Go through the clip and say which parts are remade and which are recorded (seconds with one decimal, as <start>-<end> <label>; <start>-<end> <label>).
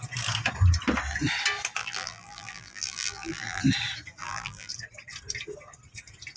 0.0-1.8 recorded; 1.8-3.6 remade; 3.6-4.2 recorded; 4.2-4.7 remade; 4.7-6.4 recorded